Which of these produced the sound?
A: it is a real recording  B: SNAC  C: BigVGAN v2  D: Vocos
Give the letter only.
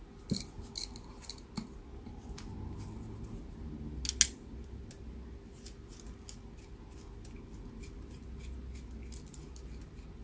A